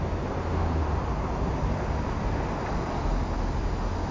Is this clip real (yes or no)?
yes